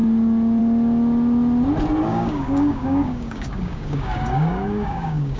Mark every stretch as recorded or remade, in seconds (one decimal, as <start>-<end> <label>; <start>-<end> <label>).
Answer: 0.0-2.1 recorded; 2.1-5.4 remade